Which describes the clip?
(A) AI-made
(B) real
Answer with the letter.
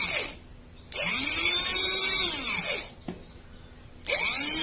B